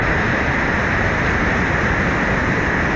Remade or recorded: recorded